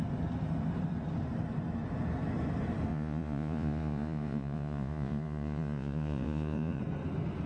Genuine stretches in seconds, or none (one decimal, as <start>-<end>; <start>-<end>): 0.0-2.9; 6.8-7.5